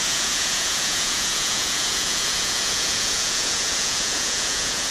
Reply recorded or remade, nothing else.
remade